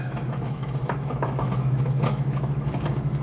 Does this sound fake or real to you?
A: fake